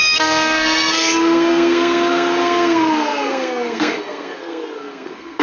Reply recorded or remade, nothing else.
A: remade